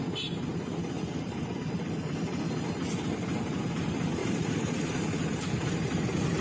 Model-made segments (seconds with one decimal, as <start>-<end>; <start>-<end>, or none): 4.2-4.8